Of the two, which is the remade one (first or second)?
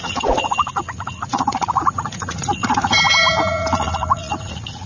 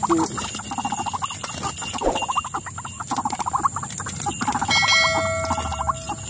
first